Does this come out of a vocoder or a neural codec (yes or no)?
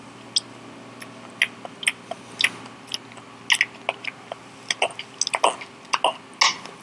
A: no